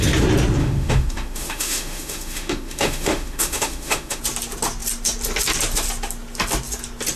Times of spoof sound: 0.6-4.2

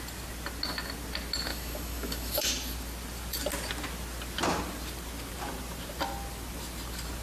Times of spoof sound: 1.5-2.5

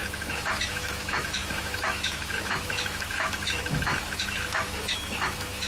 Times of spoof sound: 0.0-5.7

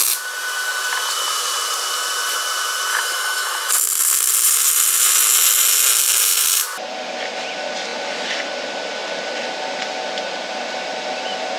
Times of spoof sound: 2.9-3.7